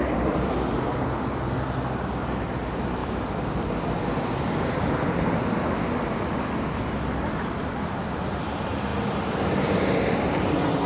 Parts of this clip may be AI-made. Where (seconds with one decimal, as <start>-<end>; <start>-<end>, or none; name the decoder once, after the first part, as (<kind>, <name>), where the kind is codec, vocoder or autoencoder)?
none